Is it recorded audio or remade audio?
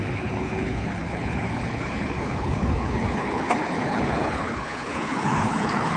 remade